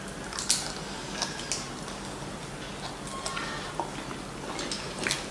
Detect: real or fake real